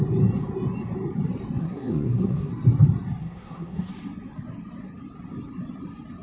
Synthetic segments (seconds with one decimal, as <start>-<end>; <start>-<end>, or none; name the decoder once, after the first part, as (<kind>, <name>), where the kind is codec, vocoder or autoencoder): 1.6-2.5 (codec, SNAC); 3.2-3.9